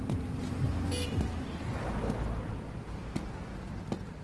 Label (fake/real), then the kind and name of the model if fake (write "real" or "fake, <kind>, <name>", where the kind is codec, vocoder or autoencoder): real